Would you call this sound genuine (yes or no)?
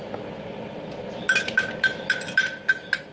yes